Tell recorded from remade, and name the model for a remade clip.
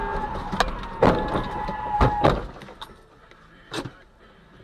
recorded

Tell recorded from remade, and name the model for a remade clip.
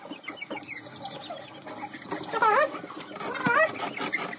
recorded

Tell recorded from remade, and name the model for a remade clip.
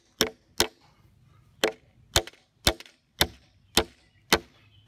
recorded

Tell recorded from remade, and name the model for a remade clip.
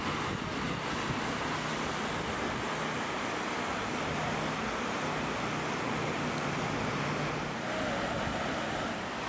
recorded